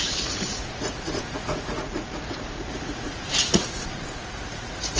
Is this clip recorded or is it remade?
remade